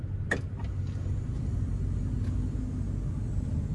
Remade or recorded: recorded